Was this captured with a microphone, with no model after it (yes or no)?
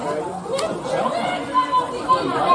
yes